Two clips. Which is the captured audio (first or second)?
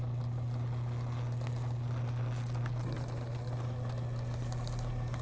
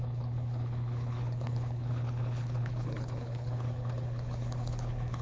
first